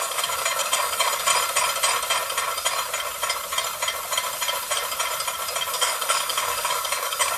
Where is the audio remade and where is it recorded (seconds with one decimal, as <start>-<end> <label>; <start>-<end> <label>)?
0.0-1.3 remade; 1.3-5.7 recorded; 5.7-7.4 remade